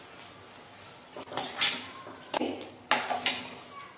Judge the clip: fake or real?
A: real